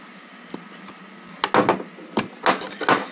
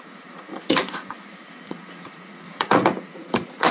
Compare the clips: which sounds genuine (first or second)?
first